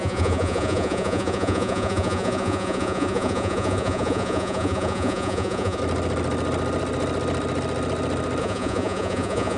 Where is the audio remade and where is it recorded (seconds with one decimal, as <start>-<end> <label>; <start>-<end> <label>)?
0.0-5.8 remade; 5.8-8.4 recorded; 8.4-9.6 remade